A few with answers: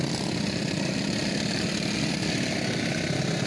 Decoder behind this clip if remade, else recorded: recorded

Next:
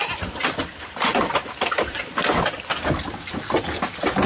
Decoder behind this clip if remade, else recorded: recorded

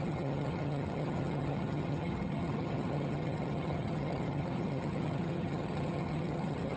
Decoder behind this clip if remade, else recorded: remade, vocoder, HiFi-GAN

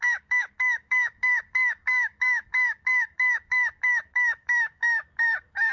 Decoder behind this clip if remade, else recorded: remade, codec, DAC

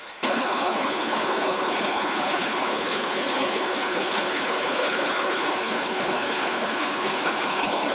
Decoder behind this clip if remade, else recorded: remade, codec, HILCodec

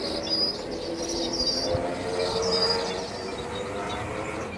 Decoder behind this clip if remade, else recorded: recorded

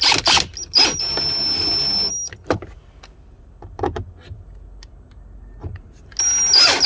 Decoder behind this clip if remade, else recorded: recorded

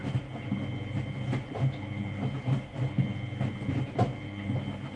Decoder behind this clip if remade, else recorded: recorded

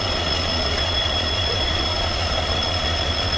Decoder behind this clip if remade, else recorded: remade, vocoder, Vocos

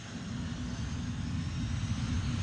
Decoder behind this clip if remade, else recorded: recorded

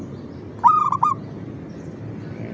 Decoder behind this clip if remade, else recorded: recorded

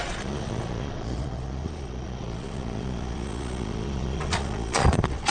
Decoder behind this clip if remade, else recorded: remade, vocoder, Vocos